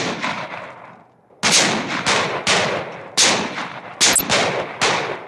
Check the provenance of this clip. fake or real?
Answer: real